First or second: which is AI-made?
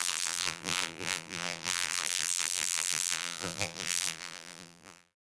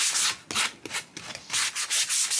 first